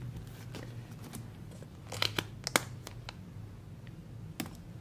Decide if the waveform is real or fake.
real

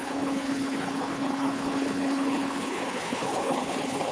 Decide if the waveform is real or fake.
fake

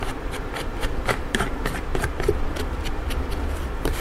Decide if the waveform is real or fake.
fake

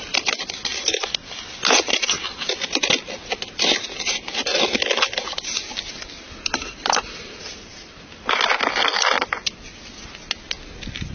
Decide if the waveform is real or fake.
real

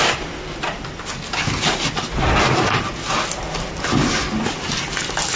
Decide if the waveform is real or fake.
real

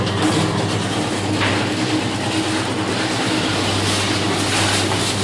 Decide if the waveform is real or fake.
real